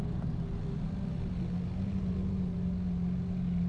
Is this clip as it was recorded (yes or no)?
yes